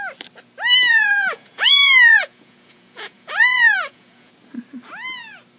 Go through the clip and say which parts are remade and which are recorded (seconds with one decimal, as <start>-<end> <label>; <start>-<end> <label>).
0.0-0.9 recorded; 0.9-4.3 remade; 4.3-5.6 recorded